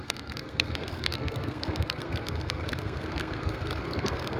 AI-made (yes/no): yes